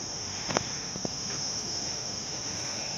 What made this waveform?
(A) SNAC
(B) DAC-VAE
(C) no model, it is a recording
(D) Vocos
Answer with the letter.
B